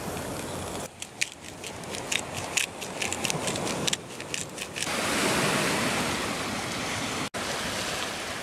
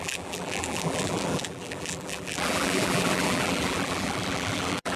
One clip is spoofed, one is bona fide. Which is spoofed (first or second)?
second